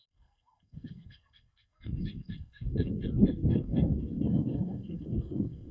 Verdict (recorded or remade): remade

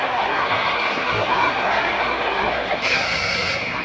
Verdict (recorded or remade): remade